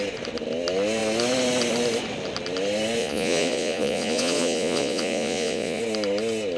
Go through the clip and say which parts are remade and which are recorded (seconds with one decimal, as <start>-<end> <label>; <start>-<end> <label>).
0.0-3.0 recorded; 3.0-5.8 remade; 5.8-6.6 recorded